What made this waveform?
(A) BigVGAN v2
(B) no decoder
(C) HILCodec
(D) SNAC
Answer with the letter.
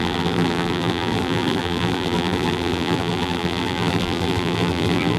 A